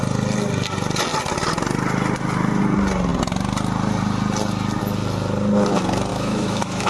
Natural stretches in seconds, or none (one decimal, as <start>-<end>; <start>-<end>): 0.0-6.1

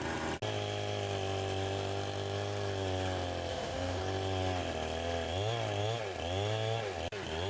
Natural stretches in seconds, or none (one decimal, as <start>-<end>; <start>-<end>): 0.0-3.5; 4.0-7.5

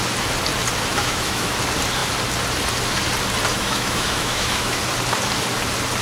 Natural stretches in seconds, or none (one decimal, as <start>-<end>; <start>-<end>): 0.0-0.9; 1.5-3.5; 4.8-6.0

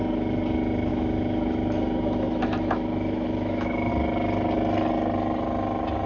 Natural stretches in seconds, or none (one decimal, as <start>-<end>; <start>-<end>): 0.0-0.9; 3.9-6.1

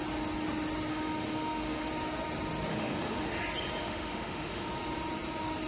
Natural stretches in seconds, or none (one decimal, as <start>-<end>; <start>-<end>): 0.0-0.9; 1.9-2.7; 3.4-3.8; 4.7-5.7